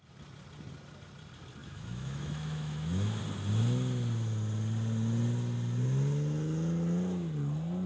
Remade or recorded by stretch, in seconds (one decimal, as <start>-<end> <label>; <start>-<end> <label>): 0.0-1.6 recorded; 1.6-3.2 remade; 3.2-7.9 recorded